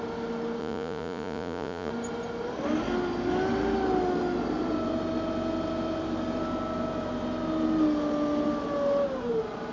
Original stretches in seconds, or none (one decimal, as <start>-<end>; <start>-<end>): 0.0-0.6; 1.9-9.7

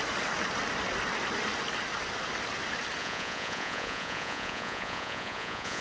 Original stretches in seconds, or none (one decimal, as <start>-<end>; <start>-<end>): 0.0-3.0

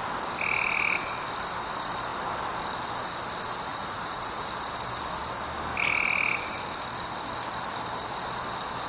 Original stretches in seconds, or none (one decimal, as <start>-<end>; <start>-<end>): 0.0-3.7; 4.5-8.9

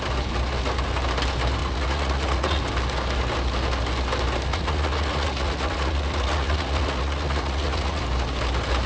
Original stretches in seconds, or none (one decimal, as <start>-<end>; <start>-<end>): 0.0-1.6; 2.6-4.5; 8.0-8.9

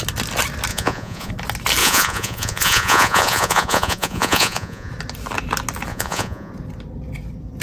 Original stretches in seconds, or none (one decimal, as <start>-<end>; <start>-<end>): 0.0-0.7; 1.3-1.8; 4.9-5.9; 6.5-7.6

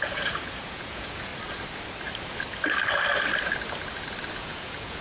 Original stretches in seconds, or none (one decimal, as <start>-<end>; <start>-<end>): 1.3-4.3

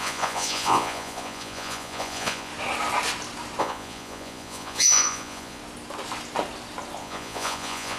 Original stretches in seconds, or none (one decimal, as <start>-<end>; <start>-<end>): 2.5-3.6; 5.6-7.0

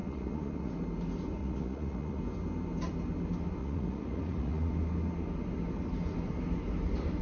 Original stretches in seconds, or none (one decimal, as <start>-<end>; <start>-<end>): 0.7-1.4; 2.2-3.6; 4.7-7.2